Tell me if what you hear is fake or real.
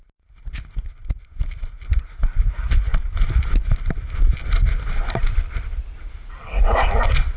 real